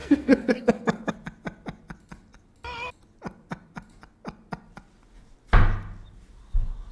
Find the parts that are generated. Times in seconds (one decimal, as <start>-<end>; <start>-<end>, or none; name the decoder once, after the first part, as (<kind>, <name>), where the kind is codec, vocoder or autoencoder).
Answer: 0.0-1.1 (codec, SNAC)